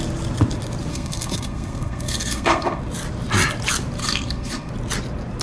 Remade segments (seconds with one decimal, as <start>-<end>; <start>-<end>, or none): 0.9-2.8; 4.0-4.7